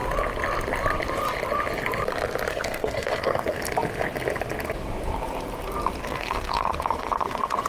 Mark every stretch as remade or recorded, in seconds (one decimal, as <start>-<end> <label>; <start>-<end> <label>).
0.0-2.5 recorded; 2.5-3.6 remade; 3.6-6.0 recorded; 6.0-7.7 remade